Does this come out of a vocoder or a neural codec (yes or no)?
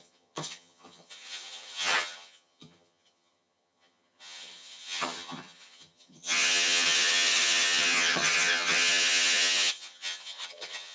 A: yes